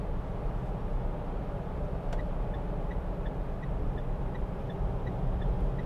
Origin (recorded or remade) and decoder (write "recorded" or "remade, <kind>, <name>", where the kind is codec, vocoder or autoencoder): recorded